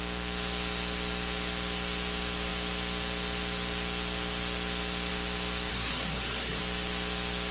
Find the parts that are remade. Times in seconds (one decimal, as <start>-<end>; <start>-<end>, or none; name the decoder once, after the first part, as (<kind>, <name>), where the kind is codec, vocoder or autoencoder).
5.7-6.6 (codec, SNAC)